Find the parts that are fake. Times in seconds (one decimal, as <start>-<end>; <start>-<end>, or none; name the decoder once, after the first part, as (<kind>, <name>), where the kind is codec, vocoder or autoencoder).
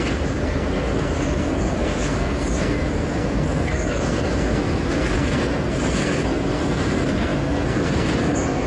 0.0-8.7 (codec, SNAC)